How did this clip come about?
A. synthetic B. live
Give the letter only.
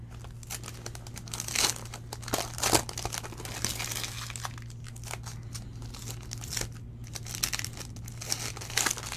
B